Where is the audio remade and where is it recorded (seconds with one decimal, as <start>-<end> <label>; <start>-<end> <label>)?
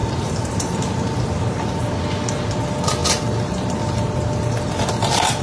0.0-1.8 remade; 1.8-5.4 recorded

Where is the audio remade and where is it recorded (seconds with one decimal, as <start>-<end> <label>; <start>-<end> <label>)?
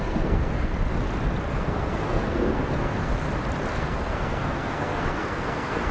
0.0-0.7 remade; 0.7-1.5 recorded; 1.5-3.1 remade; 3.1-3.7 recorded; 3.7-5.9 remade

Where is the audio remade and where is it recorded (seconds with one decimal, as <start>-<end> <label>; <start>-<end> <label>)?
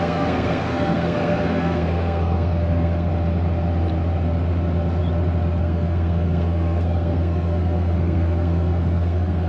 0.0-3.1 remade; 3.1-5.6 recorded; 5.6-9.5 remade